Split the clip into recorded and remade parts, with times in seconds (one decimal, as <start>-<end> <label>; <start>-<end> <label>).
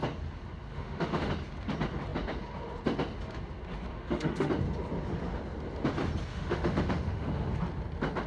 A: 0.0-0.7 recorded; 0.7-1.3 remade; 1.3-3.9 recorded; 3.9-4.5 remade; 4.5-6.3 recorded; 6.3-7.5 remade; 7.5-8.3 recorded